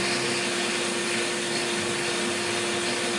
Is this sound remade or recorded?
recorded